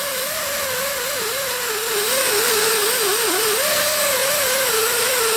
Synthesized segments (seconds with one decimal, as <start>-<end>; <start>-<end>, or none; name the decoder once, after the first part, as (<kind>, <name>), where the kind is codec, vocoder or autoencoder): 2.2-2.7 (codec, SNAC)